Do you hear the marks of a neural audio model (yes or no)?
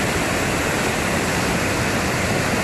no